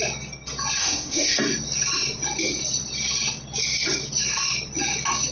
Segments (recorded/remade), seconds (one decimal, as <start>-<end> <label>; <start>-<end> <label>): 0.0-0.8 recorded; 0.8-1.4 remade; 1.4-5.3 recorded